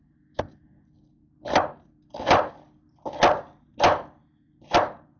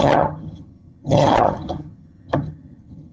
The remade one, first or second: second